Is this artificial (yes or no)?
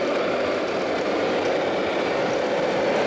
no